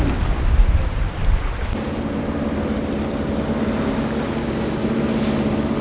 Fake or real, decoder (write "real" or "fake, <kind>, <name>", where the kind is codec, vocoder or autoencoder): real